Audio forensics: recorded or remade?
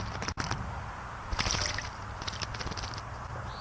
recorded